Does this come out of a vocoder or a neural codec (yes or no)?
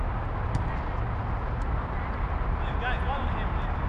no